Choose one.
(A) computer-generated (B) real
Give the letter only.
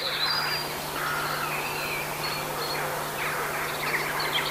B